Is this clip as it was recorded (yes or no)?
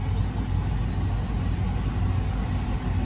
yes